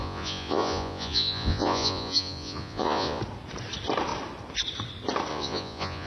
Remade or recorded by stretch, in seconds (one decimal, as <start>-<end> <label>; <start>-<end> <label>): 0.0-3.2 remade; 3.2-5.3 recorded; 5.3-6.1 remade